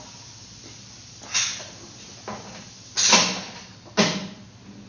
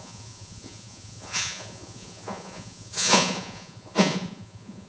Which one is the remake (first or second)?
second